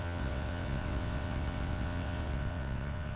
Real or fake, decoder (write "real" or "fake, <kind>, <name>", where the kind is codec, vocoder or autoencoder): fake, vocoder, WaveNeXt